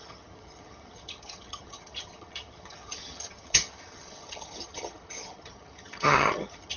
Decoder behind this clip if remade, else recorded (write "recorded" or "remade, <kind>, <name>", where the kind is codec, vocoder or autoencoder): remade, vocoder, HiFi-GAN